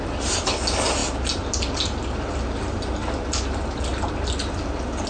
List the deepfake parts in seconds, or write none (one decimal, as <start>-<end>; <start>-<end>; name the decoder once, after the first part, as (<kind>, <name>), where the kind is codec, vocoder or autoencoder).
none